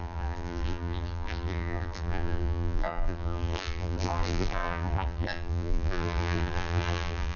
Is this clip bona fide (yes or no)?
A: no